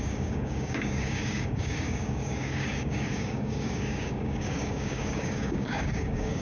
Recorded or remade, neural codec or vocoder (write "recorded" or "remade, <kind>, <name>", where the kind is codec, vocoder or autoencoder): remade, codec, DAC